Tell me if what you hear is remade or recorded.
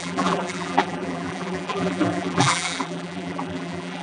remade